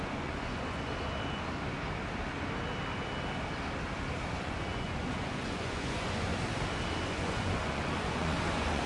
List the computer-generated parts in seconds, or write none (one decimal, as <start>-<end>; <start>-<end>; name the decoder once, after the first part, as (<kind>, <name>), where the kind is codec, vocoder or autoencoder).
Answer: 0.0-0.9 (vocoder, Vocos); 4.3-6.3; 7.1-8.9